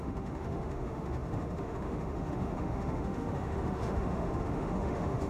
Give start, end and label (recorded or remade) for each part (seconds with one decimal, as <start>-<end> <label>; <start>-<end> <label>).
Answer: 0.0-5.3 remade